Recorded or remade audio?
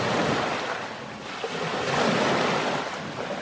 recorded